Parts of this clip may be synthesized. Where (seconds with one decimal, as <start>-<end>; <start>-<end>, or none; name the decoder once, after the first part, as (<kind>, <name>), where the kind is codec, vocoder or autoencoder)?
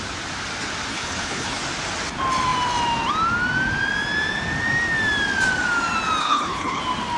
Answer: 0.9-1.6 (codec, HILCodec); 6.2-6.8